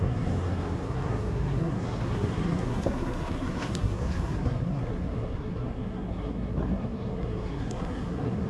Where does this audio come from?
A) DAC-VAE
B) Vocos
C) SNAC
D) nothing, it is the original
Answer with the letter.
C